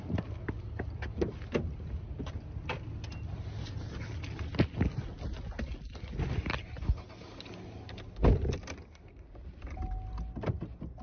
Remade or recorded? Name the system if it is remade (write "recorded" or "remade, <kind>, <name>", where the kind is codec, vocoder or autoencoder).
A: recorded